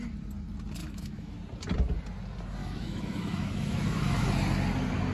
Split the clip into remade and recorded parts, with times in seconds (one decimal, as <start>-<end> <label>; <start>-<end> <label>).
0.0-0.8 recorded; 0.8-1.3 remade; 1.3-2.6 recorded; 2.6-4.3 remade; 4.3-5.1 recorded